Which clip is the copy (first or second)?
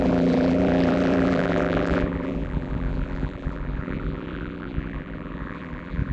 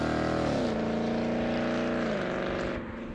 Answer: first